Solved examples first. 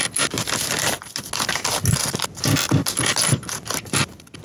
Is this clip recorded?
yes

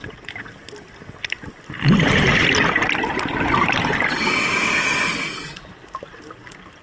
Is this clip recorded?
yes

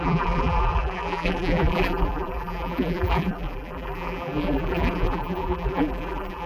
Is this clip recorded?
no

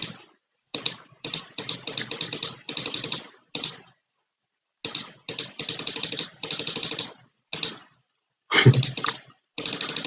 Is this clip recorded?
yes